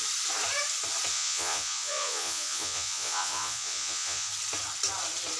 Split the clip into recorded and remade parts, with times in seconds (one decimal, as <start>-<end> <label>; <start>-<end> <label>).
0.0-1.1 recorded; 1.1-4.3 remade; 4.3-5.4 recorded